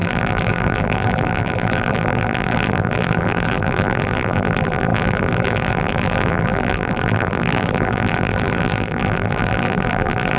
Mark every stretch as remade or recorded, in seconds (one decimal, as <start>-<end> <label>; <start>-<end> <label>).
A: 0.0-10.4 remade